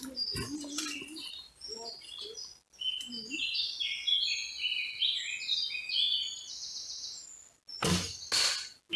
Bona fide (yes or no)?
yes